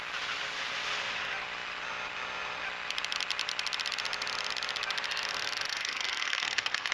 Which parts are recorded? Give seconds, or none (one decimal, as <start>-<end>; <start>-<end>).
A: 0.0-5.7